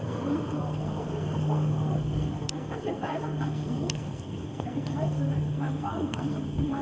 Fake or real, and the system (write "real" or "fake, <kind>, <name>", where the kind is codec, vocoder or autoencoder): fake, codec, SNAC